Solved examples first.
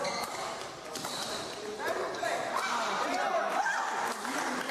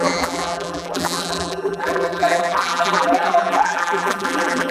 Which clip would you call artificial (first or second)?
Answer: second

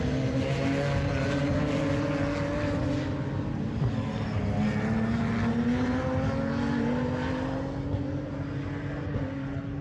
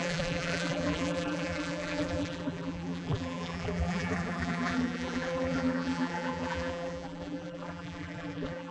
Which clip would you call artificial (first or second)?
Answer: second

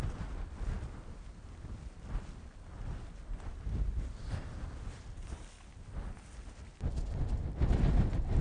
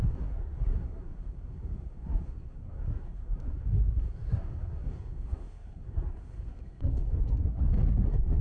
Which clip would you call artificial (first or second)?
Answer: second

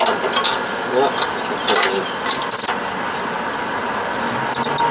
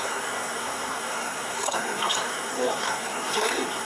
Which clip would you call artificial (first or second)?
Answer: second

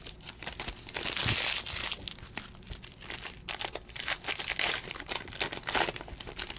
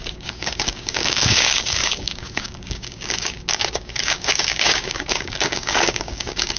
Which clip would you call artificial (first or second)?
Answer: second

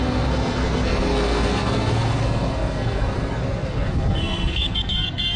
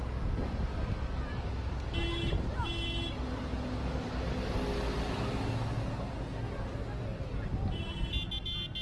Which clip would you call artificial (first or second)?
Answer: first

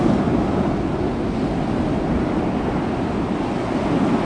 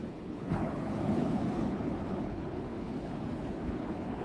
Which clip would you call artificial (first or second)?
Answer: second